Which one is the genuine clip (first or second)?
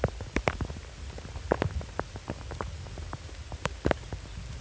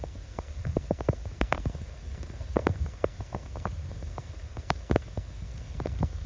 first